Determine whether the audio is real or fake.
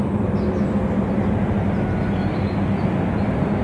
real